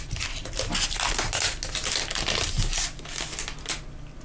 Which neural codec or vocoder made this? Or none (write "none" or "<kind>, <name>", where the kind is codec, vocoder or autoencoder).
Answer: none